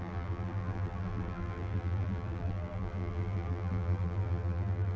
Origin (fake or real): fake